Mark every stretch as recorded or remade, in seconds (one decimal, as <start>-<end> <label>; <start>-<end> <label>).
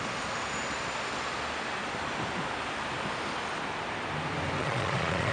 0.0-4.6 recorded; 4.6-5.3 remade